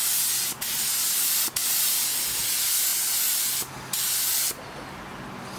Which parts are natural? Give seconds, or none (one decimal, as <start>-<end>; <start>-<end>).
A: 0.0-1.6; 2.3-5.6